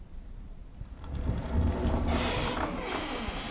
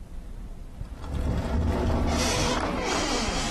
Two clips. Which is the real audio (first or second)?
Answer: second